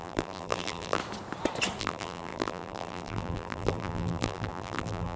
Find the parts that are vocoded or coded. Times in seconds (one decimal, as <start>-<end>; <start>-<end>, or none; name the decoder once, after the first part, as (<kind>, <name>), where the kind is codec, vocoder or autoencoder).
0.0-1.0 (vocoder, BigVGAN v2); 1.8-5.2